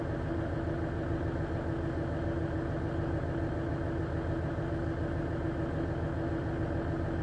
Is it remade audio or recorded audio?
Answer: recorded